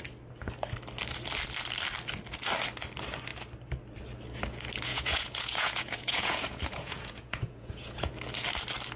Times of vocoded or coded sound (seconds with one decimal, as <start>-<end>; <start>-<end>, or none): 4.9-8.1